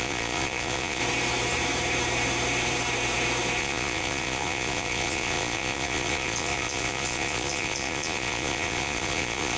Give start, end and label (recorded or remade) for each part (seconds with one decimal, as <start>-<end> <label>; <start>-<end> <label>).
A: 0.0-1.0 remade; 1.0-3.6 recorded; 3.6-9.6 remade